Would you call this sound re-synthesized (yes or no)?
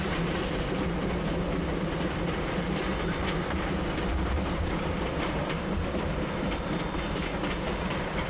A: no